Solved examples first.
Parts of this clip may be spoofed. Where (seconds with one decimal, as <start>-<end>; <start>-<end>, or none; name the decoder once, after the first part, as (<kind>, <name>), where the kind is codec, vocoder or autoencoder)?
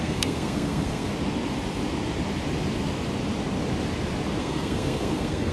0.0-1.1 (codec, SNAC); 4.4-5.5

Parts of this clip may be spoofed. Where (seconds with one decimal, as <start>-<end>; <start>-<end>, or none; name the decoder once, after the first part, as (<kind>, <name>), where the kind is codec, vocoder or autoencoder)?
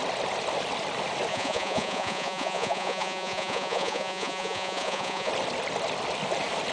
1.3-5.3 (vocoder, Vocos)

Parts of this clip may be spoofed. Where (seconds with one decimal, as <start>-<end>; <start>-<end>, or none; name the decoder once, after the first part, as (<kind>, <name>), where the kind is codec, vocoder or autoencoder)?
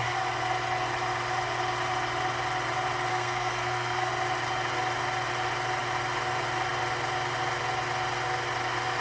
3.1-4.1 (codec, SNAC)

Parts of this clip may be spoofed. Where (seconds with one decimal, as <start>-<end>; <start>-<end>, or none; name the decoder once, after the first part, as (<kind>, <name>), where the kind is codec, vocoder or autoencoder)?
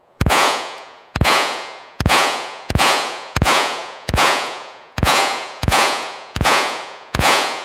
0.0-7.6 (vocoder, Vocos)